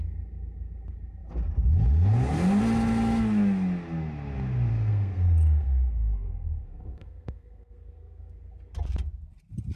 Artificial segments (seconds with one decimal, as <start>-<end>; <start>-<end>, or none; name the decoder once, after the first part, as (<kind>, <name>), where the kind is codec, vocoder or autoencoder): 4.7-8.3 (codec, SNAC)